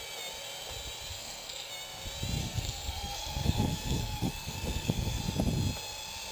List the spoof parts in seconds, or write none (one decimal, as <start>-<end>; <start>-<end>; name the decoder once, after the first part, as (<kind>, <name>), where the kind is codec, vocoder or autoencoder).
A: 1.1-1.7 (codec, SNAC); 2.4-5.2